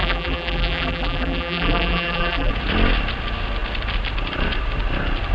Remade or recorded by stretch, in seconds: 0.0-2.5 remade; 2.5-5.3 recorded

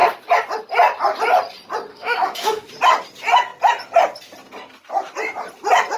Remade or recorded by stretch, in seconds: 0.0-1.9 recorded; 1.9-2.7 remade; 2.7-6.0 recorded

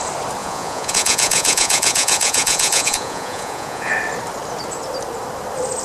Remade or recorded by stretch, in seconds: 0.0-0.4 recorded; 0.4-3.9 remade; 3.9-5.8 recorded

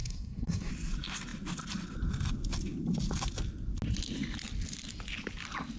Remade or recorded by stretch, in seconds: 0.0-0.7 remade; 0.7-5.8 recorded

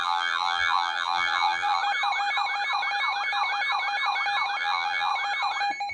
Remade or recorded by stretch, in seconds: 0.0-1.8 remade; 1.8-4.6 recorded; 4.6-5.1 remade; 5.1-5.9 recorded

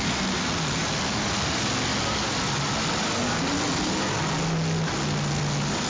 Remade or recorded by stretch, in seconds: 0.0-5.9 recorded

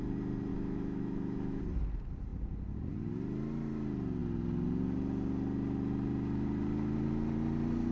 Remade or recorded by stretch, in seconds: 0.0-0.5 recorded; 0.5-1.6 remade; 1.6-7.9 recorded

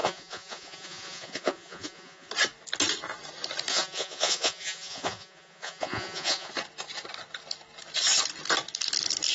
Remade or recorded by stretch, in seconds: 0.0-2.3 remade; 2.3-3.7 recorded; 3.7-6.5 remade; 6.5-9.3 recorded